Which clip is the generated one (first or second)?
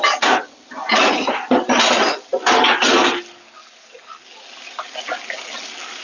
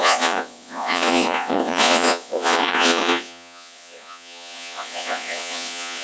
second